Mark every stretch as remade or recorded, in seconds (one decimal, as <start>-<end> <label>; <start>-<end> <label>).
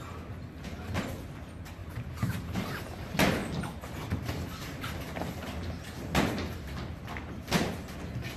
0.0-1.8 recorded; 1.8-2.7 remade; 2.7-8.4 recorded